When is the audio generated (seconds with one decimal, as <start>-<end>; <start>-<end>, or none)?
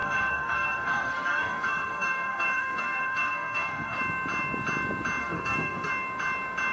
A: 0.0-4.0; 5.2-5.9